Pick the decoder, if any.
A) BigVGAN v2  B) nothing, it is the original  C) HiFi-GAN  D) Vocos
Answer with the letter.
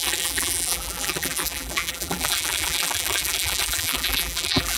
A